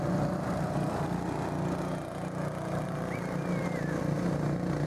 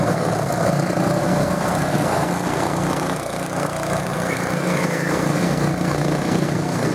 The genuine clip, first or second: first